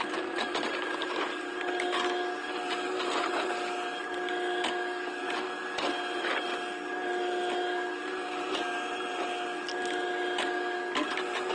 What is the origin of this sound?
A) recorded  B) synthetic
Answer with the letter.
A